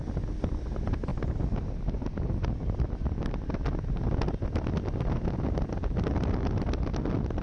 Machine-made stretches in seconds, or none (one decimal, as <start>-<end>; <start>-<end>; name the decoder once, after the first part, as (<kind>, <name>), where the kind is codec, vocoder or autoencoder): none